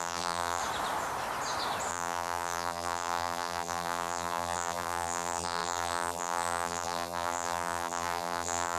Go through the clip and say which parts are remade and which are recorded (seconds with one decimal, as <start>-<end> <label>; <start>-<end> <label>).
0.0-0.6 remade; 0.6-1.9 recorded; 1.9-8.8 remade